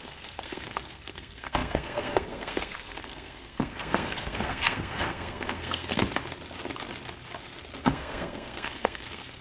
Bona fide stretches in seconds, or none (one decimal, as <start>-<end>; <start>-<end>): 6.0-7.8